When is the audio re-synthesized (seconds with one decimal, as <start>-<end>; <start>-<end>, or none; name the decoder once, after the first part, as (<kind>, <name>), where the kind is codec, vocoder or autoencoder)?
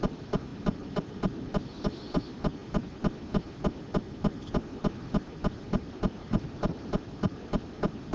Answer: 0.0-1.5 (vocoder, BigVGAN v2); 5.7-8.1